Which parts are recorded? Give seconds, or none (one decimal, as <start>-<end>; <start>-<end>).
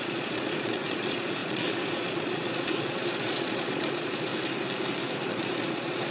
4.3-5.3